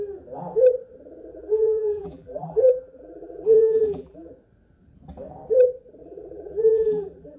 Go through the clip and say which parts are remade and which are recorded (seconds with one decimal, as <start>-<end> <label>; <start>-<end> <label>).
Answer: 0.0-1.3 recorded; 1.3-4.3 remade; 4.3-6.0 recorded; 6.0-7.4 remade